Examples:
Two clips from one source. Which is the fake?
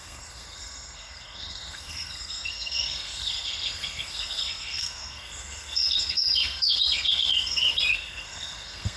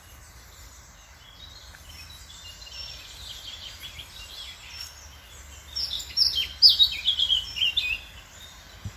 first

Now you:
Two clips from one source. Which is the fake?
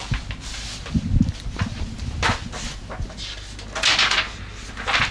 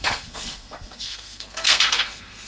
second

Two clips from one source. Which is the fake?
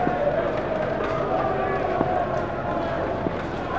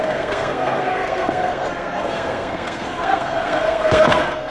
second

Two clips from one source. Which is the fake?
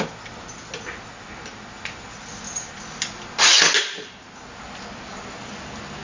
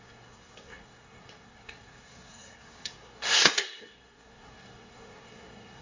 second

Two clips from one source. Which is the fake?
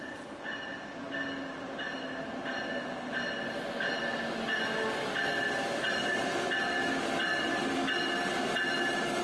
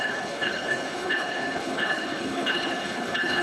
second